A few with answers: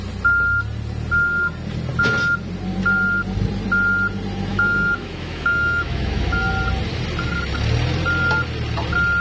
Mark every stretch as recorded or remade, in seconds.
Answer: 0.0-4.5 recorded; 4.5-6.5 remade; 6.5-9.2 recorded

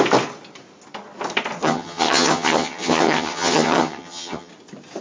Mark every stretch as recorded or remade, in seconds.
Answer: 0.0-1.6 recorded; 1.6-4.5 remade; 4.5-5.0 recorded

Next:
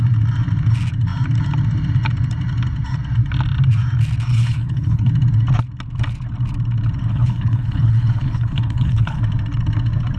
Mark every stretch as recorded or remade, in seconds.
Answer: 0.0-4.3 recorded; 4.3-5.1 remade; 5.1-7.1 recorded; 7.1-9.2 remade; 9.2-10.2 recorded